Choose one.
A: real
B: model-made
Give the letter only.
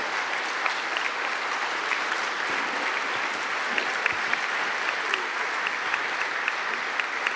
A